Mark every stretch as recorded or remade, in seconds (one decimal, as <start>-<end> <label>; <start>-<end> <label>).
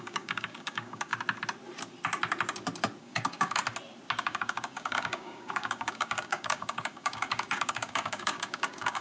0.0-1.1 remade; 1.1-3.0 recorded; 3.0-3.6 remade; 3.6-4.2 recorded; 4.2-9.0 remade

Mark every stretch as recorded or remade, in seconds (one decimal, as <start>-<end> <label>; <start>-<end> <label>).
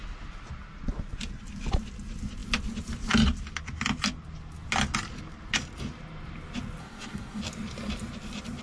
0.0-6.8 recorded; 6.8-7.4 remade; 7.4-8.6 recorded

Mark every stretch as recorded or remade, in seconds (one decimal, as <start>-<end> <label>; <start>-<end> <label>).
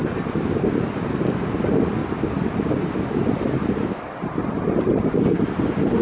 0.0-6.0 recorded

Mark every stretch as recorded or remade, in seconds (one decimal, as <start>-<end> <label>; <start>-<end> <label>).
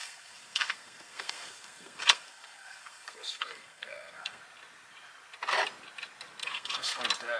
0.0-4.4 remade; 4.4-6.4 recorded; 6.4-7.0 remade; 7.0-7.4 recorded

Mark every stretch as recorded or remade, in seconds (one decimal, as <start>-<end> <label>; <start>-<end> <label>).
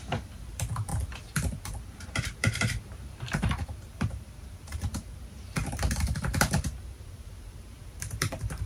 0.0-0.9 remade; 0.9-1.6 recorded; 1.6-5.6 remade; 5.6-6.3 recorded; 6.3-8.7 remade